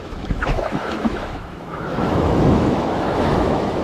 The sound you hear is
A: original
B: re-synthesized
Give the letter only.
B